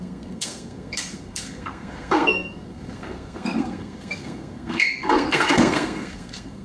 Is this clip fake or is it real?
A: fake